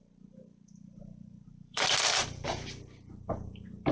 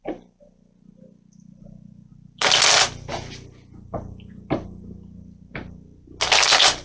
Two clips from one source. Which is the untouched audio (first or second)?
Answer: second